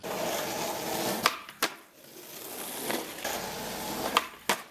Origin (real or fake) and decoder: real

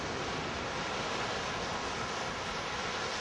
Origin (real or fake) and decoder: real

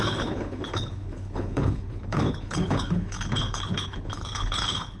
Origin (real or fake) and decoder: fake, codec, HILCodec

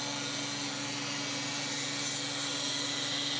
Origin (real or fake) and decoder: real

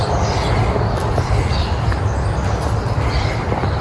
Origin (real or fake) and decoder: real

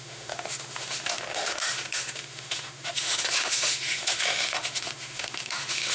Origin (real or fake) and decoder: fake, autoencoder, DAC-VAE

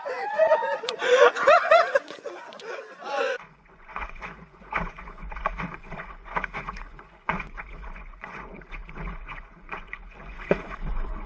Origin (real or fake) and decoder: fake, vocoder, Vocos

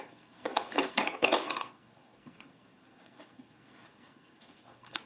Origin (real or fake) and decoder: fake, codec, SNAC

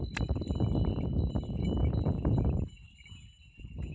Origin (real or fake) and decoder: fake, vocoder, BigVGAN v2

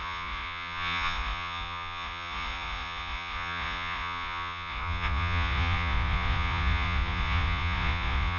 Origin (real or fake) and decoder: fake, vocoder, Vocos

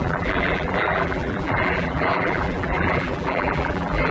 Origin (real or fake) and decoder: fake, vocoder, BigVGAN v2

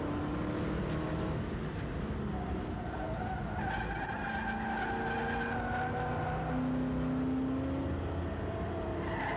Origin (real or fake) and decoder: real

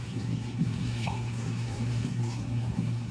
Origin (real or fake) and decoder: fake, codec, SNAC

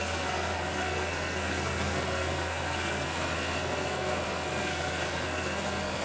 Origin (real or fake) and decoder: fake, codec, SNAC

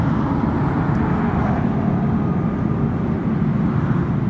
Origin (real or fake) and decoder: real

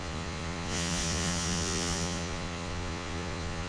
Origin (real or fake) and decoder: fake, vocoder, Vocos